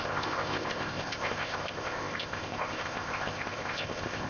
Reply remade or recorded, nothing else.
remade